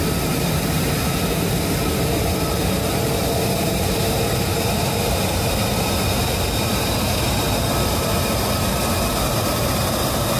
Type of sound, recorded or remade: remade